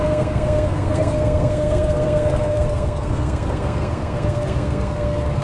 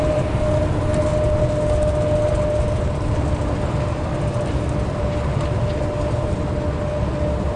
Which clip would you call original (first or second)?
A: second